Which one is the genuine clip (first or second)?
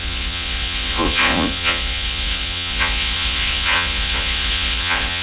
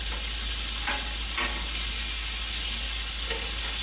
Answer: second